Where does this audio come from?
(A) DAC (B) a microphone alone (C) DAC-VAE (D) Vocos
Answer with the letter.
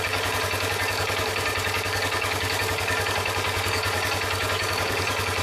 A